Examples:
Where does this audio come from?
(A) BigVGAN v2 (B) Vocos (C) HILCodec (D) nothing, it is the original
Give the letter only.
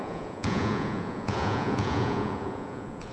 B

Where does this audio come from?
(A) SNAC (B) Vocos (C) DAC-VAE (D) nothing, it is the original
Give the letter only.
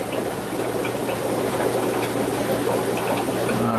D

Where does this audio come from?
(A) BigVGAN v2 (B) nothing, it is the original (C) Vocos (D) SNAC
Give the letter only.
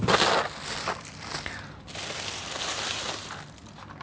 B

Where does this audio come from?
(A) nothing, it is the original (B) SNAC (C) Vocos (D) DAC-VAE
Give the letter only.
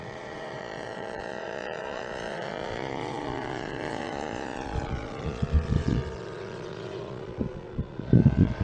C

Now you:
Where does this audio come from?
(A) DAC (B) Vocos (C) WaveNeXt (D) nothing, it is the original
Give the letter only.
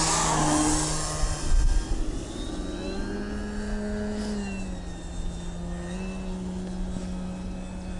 D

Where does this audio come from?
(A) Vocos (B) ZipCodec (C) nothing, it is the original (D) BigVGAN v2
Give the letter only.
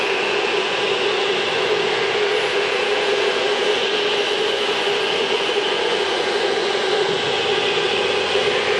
A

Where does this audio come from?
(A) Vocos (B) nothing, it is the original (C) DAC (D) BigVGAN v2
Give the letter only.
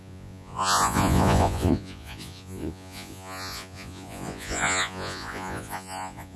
A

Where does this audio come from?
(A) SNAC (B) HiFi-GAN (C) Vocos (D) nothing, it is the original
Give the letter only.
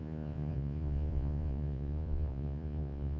C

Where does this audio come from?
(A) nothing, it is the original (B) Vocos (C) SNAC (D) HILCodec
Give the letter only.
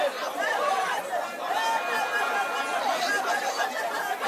A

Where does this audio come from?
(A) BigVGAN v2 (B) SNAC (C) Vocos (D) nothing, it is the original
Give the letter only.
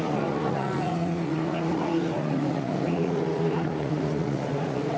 C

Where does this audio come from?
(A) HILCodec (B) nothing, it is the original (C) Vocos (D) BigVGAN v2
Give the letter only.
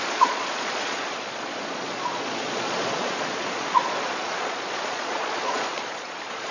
C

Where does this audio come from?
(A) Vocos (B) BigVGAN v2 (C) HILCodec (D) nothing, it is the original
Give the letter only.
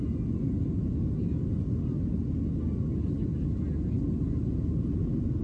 D